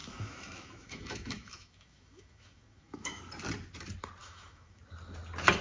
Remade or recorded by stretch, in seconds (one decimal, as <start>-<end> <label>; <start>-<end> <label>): 0.0-3.2 remade; 3.2-4.2 recorded; 4.2-4.8 remade; 4.8-5.6 recorded